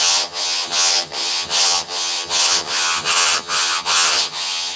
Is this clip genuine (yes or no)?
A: no